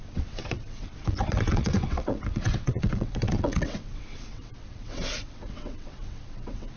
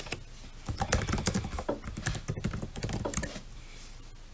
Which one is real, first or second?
second